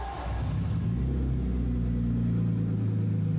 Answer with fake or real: real